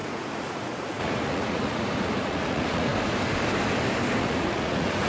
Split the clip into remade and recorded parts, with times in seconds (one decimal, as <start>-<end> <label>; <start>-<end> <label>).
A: 0.0-2.9 remade; 2.9-4.2 recorded; 4.2-5.1 remade